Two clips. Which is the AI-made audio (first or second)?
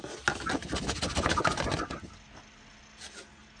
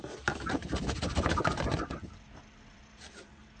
second